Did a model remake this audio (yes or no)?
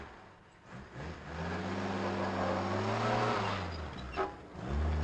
no